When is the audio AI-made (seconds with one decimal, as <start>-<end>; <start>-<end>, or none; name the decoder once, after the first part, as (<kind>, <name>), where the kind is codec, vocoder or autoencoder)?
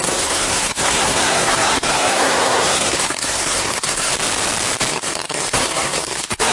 0.0-4.1 (codec, SNAC); 4.9-6.5